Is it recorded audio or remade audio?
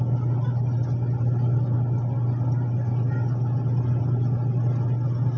recorded